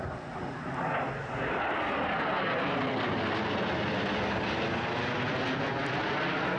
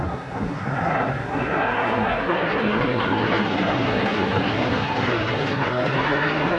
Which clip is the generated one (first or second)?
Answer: second